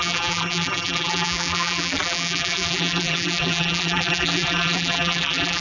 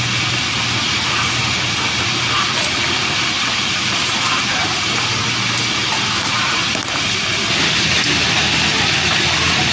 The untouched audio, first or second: second